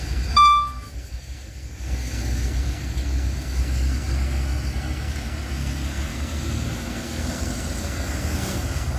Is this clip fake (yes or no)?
yes